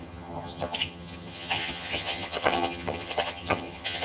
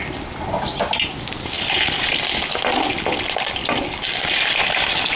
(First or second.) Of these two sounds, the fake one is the first